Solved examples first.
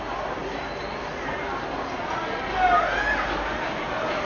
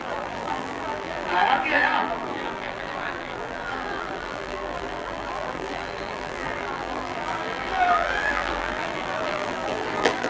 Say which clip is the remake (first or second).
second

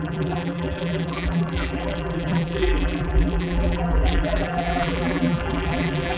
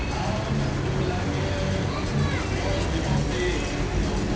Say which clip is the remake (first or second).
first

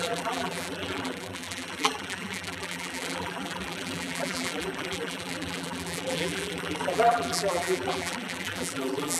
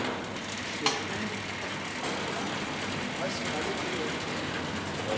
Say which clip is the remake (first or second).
first